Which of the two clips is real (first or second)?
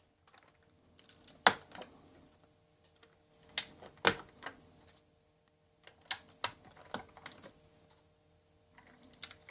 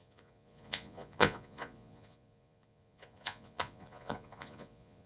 first